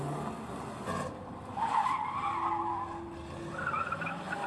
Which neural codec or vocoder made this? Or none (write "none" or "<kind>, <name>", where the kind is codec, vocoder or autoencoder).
none